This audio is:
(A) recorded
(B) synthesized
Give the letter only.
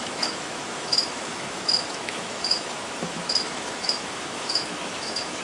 B